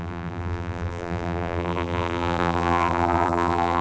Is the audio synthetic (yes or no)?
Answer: yes